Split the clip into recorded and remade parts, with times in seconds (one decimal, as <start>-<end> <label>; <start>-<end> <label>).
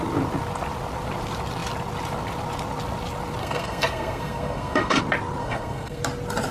0.0-3.4 recorded; 3.4-5.0 remade; 5.0-5.4 recorded; 5.4-6.0 remade; 6.0-6.5 recorded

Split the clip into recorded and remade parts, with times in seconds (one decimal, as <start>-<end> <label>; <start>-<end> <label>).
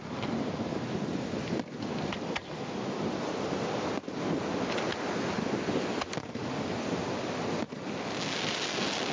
0.0-9.1 recorded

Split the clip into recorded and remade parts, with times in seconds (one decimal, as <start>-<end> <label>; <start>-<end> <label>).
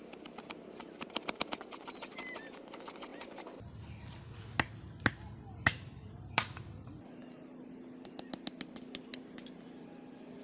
0.0-10.4 recorded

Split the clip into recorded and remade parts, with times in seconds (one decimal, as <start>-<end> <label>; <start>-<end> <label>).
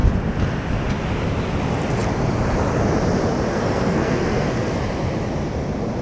0.0-3.5 recorded; 3.5-4.8 remade; 4.8-6.0 recorded